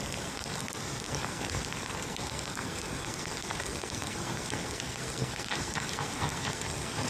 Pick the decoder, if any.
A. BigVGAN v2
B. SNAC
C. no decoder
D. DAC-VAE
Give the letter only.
B